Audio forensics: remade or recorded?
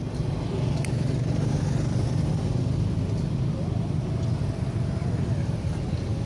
recorded